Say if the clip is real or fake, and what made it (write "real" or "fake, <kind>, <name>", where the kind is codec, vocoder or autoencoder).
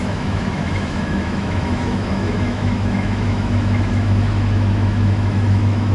fake, autoencoder, DAC-VAE